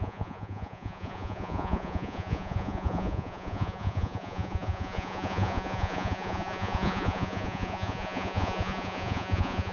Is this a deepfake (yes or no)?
yes